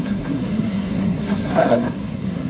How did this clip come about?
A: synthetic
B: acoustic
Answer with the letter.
A